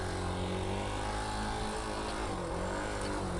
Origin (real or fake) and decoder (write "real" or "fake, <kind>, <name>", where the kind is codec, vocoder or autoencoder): real